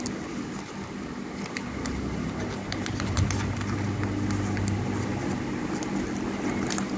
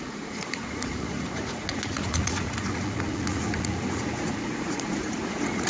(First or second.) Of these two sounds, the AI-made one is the second